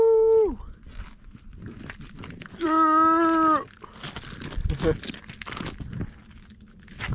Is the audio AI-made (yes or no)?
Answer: no